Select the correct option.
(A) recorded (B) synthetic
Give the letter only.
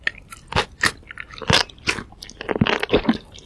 A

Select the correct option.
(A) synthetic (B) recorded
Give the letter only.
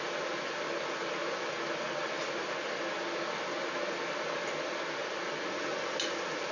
B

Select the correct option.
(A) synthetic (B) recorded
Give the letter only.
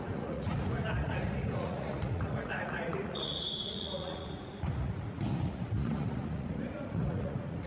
A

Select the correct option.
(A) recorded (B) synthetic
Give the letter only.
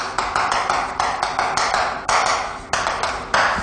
A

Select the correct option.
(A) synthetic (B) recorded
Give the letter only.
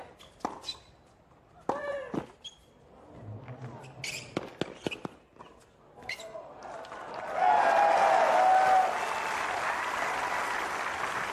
B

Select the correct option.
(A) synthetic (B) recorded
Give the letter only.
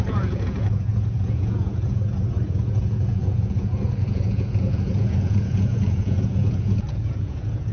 A